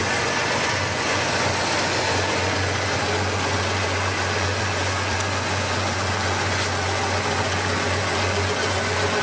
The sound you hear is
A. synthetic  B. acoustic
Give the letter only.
A